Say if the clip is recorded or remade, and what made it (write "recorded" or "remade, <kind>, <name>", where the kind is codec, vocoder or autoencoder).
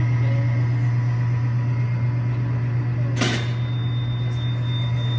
recorded